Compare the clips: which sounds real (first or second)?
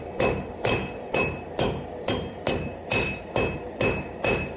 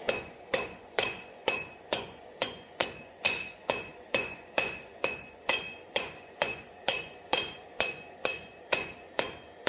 first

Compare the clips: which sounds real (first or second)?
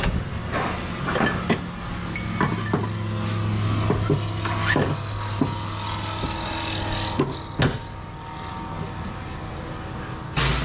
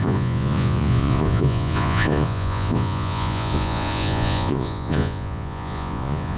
first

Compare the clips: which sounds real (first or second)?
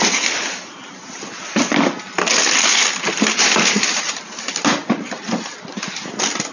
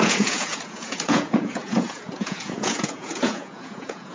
first